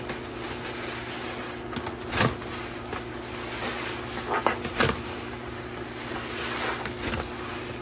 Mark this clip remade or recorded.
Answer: recorded